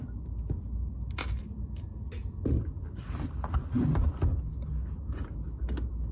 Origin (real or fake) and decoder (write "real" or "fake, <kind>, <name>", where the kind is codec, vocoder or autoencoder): real